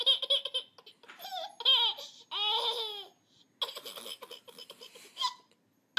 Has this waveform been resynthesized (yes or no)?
no